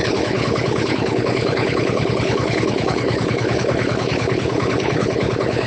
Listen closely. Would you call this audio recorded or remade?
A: remade